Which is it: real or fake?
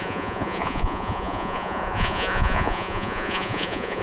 fake